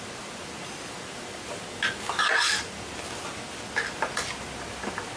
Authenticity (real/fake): real